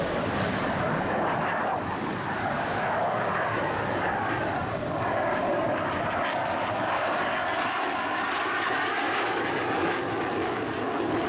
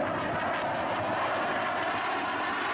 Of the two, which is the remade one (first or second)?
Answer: first